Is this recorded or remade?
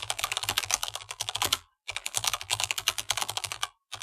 remade